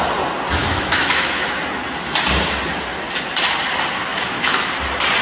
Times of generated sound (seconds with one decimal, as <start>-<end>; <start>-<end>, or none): 0.6-1.6; 4.1-4.7